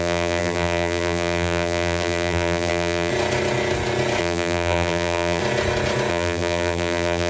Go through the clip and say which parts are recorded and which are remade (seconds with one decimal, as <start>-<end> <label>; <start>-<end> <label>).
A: 0.0-3.1 remade; 3.1-4.2 recorded; 4.2-5.4 remade; 5.4-6.1 recorded; 6.1-7.3 remade

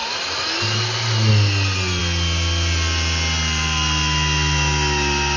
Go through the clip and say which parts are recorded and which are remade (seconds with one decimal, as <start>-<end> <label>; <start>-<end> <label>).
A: 0.0-5.4 recorded

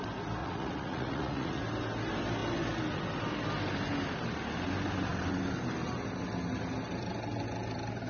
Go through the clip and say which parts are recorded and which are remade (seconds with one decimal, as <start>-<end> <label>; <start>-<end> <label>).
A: 0.0-0.4 recorded; 0.4-1.6 remade; 1.6-8.1 recorded

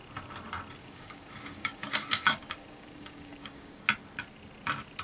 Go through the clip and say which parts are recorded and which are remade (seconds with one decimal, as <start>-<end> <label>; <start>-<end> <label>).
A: 0.0-0.8 recorded; 0.8-3.8 remade; 3.8-5.0 recorded

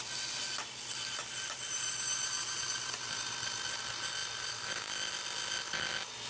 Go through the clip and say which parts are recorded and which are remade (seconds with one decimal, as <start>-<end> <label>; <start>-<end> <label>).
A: 0.0-6.3 recorded

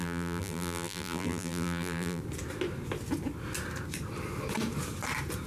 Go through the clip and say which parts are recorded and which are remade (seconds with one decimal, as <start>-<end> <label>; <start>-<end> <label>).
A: 0.0-2.2 remade; 2.2-5.5 recorded

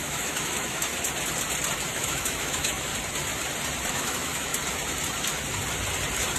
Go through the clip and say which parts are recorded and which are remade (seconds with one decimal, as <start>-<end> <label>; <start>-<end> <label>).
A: 0.0-0.9 remade; 0.9-1.9 recorded; 1.9-2.9 remade; 2.9-3.9 recorded; 3.9-4.5 remade; 4.5-6.4 recorded